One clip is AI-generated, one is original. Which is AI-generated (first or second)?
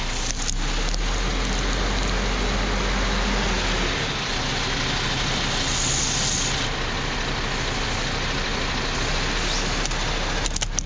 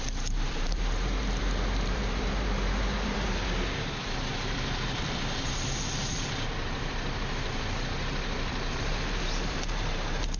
second